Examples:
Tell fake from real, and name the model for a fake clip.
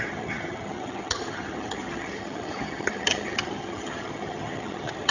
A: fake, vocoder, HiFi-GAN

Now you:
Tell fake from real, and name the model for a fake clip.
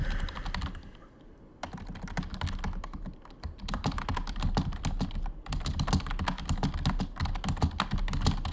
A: real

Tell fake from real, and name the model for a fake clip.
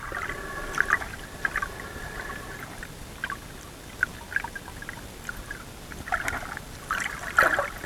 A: real